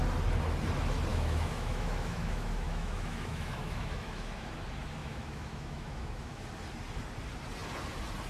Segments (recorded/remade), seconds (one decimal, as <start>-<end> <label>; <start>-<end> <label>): 0.0-1.1 recorded; 1.1-4.5 remade; 4.5-5.0 recorded; 5.0-6.4 remade; 6.4-8.3 recorded